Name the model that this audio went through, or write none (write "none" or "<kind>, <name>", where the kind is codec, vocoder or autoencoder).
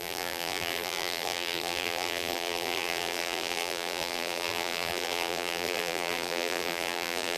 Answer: vocoder, BigVGAN v2